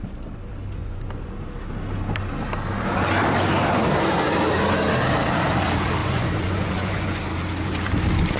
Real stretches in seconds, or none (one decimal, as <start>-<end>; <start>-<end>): 0.0-0.8; 1.3-6.0; 7.2-8.4